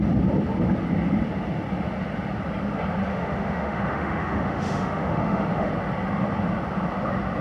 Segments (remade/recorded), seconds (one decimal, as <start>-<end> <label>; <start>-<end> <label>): 0.0-3.1 recorded; 3.1-5.7 remade; 5.7-7.4 recorded